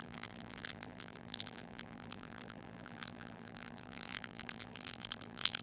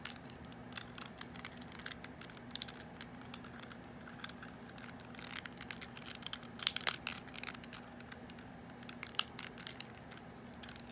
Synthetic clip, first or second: first